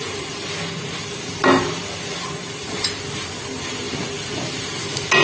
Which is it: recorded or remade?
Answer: recorded